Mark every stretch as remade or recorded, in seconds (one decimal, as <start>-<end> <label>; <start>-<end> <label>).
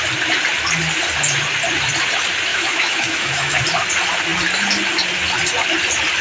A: 0.0-2.5 recorded; 2.5-3.6 remade; 3.6-6.2 recorded